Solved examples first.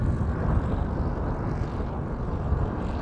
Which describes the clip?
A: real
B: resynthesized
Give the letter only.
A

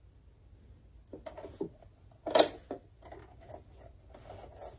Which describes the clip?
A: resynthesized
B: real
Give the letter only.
B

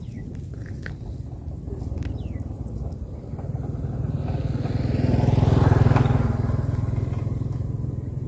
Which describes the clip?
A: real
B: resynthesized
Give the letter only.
A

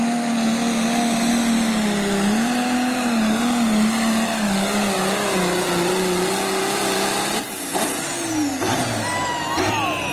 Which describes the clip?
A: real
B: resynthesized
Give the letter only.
A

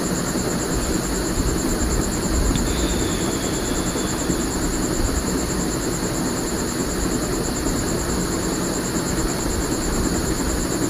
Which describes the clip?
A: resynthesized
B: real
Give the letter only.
B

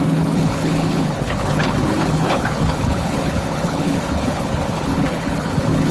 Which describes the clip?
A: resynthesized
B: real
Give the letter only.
A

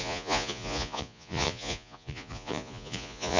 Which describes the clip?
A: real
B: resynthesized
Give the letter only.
B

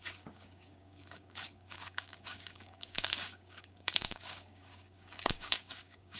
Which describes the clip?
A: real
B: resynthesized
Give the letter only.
B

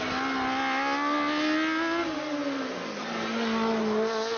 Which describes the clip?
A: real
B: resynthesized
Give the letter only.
A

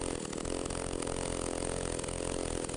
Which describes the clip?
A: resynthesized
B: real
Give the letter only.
B